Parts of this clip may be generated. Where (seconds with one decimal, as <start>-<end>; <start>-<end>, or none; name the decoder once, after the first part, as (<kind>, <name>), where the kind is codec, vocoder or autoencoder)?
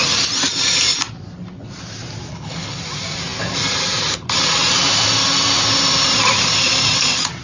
2.3-2.8 (codec, HILCodec)